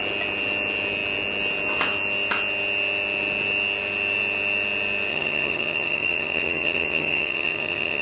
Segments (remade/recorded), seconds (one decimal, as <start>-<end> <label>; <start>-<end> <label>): 0.0-5.1 recorded; 5.1-8.0 remade